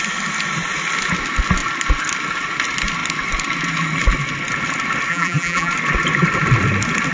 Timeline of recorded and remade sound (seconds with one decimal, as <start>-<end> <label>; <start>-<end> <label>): 0.0-5.1 recorded; 5.1-5.7 remade; 5.7-7.1 recorded